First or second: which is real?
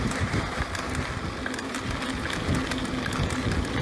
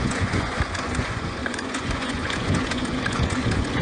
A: first